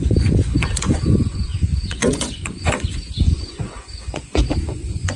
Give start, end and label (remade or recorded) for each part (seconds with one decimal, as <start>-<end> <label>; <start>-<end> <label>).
0.0-5.2 remade